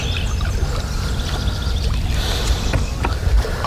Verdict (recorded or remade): recorded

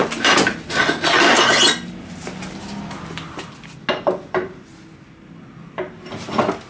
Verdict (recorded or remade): recorded